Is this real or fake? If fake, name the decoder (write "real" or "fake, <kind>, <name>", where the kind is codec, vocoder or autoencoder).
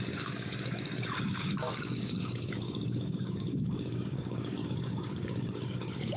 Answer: fake, codec, DAC